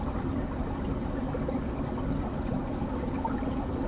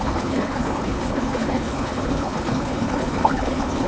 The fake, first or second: second